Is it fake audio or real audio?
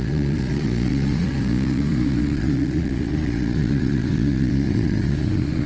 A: fake